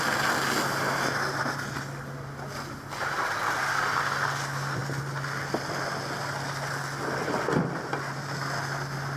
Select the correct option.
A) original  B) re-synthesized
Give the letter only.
A